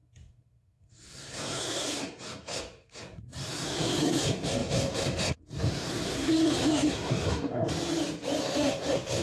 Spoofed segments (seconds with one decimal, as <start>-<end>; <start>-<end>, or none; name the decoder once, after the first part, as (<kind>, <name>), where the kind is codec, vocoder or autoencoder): 0.0-7.7 (codec, SNAC); 8.4-9.2